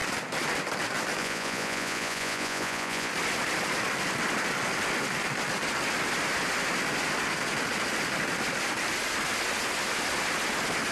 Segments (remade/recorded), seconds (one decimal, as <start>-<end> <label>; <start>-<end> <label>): 0.0-1.2 recorded; 1.2-3.1 remade; 3.1-10.9 recorded